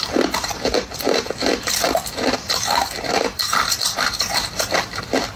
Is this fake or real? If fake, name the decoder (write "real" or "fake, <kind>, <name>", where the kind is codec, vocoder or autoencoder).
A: fake, vocoder, BigVGAN v2